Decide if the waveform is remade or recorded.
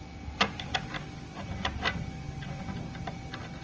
recorded